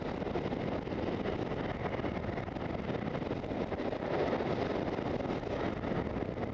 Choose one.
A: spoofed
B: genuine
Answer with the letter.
B